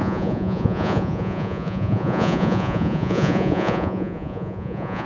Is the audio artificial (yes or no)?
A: yes